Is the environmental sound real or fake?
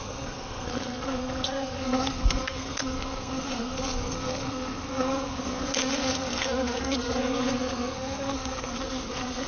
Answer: fake